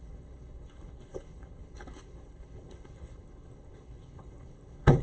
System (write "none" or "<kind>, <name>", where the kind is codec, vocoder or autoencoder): codec, HILCodec